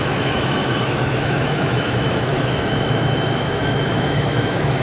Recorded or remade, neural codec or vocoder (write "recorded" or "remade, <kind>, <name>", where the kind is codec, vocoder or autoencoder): remade, autoencoder, DAC-VAE